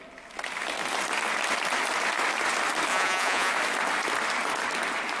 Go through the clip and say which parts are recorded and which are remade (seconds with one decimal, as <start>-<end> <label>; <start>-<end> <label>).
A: 0.0-2.9 recorded; 2.9-3.5 remade; 3.5-5.2 recorded